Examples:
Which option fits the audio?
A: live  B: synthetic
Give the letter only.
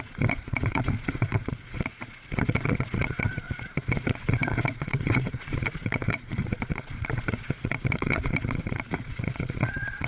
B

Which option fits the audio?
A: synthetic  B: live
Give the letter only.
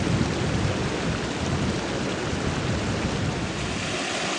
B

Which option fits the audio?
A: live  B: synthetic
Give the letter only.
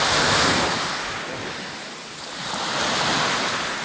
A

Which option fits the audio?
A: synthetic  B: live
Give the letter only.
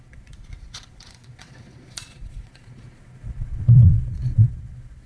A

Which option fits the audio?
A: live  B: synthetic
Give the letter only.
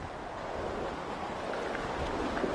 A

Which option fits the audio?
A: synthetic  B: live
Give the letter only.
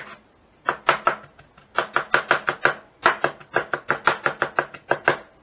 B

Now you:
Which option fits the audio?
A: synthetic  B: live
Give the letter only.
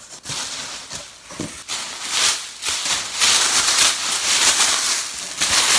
B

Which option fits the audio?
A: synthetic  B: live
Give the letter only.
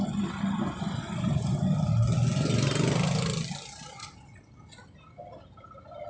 B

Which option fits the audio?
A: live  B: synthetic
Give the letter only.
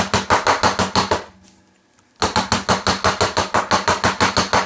A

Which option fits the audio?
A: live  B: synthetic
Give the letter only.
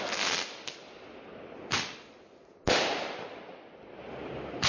A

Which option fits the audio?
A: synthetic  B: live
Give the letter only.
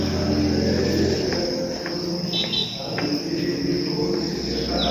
B